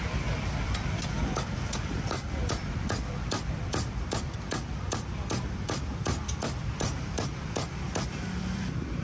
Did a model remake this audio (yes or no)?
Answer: yes